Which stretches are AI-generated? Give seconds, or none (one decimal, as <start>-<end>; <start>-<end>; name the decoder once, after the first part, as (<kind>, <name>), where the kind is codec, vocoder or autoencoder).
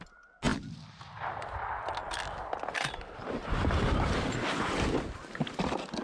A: none